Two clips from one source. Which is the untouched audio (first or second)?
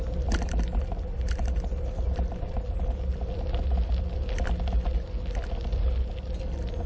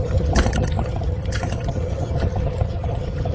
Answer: first